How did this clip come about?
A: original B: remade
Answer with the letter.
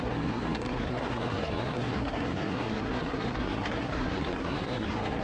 B